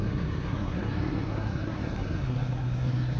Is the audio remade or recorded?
remade